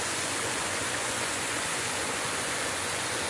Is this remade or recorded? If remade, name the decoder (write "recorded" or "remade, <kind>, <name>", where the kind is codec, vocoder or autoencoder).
remade, vocoder, Vocos